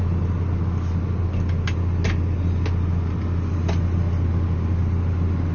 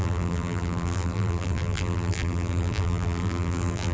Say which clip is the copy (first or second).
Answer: second